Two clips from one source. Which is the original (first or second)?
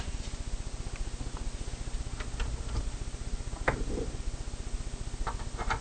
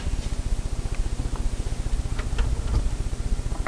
first